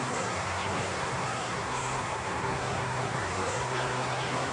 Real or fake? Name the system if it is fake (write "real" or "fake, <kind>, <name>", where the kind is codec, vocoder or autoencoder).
fake, codec, SNAC